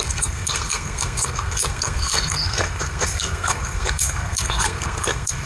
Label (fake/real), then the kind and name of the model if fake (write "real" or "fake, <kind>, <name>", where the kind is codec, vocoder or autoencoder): fake, codec, SNAC